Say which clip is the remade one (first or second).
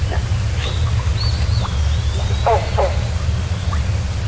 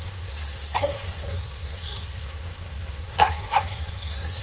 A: second